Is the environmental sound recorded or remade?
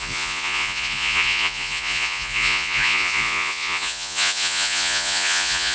remade